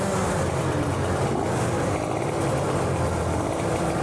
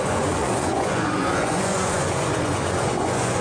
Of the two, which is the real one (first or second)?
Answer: first